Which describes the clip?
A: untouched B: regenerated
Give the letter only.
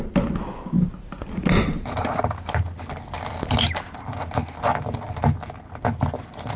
A